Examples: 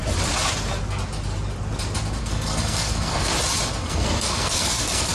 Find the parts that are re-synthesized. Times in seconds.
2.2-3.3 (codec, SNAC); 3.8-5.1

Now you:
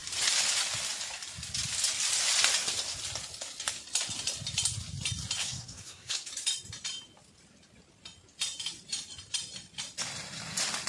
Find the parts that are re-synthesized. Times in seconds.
5.4-6.3 (codec, SNAC)

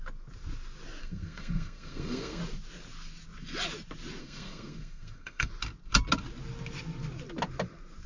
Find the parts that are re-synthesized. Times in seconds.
1.0-2.4 (codec, SNAC); 4.2-5.5

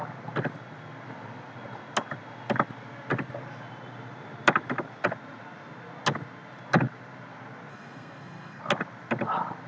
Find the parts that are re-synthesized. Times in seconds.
7.7-8.6 (codec, SNAC)

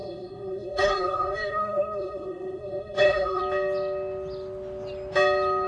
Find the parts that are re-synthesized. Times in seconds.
0.0-3.4 (codec, SNAC)

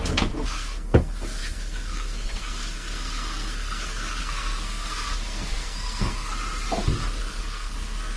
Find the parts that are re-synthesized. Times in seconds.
0.0-6.3 (codec, SNAC); 7.2-8.2

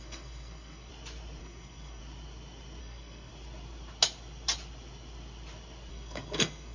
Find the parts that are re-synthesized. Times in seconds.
0.0-0.9 (codec, SNAC); 1.4-2.0; 2.8-3.3; 5.9-6.7

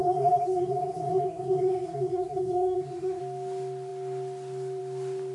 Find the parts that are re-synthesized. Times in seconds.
0.0-3.2 (codec, SNAC)